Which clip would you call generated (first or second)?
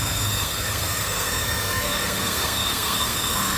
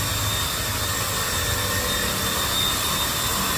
first